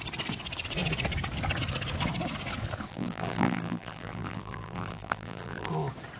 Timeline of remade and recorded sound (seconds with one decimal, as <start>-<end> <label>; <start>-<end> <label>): 0.0-2.9 recorded; 2.9-5.7 remade; 5.7-6.2 recorded